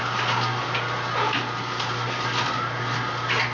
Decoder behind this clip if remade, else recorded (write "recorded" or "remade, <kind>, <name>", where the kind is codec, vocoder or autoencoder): recorded